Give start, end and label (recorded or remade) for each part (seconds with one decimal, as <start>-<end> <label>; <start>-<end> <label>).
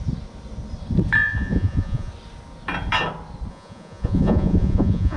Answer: 0.0-1.3 recorded; 1.3-2.1 remade; 2.1-3.5 recorded; 3.5-5.2 remade